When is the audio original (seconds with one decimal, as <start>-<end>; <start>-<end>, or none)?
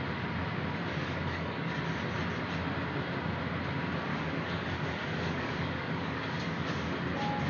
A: 0.0-1.0; 1.8-4.1; 6.9-7.5